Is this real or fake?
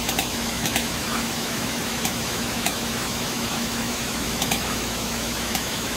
fake